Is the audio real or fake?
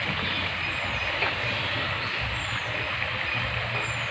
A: real